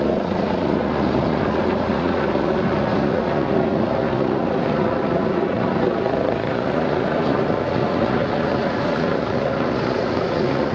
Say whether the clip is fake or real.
fake